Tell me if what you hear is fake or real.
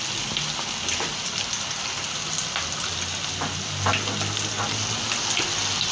real